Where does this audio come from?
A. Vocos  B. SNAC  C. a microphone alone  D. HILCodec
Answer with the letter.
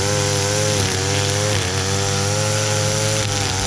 C